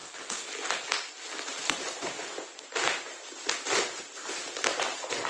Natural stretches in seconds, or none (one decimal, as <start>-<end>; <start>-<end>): 0.0-3.2